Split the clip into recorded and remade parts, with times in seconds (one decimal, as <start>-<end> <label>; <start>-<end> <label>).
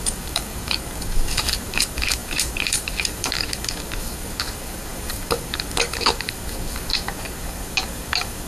0.0-8.5 remade